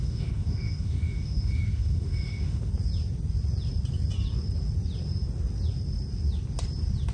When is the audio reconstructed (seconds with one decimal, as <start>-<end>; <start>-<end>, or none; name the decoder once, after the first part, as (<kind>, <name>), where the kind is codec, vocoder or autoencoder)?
0.0-2.7 (autoencoder, DAC-VAE)